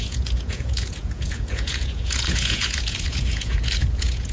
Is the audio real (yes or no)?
no